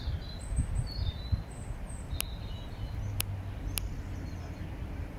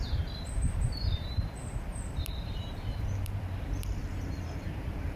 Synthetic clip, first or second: second